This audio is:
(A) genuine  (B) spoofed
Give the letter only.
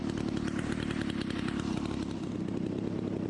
A